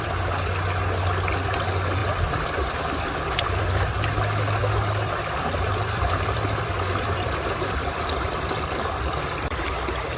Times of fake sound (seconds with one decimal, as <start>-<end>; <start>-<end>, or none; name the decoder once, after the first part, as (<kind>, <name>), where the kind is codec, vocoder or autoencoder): 2.0-4.1 (vocoder, BigVGAN v2); 4.6-9.2